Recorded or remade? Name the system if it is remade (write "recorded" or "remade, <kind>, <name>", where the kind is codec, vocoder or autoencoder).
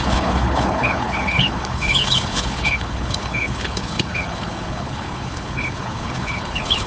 remade, codec, HILCodec